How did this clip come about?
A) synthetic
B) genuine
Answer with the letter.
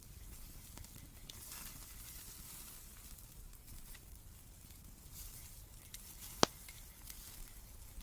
B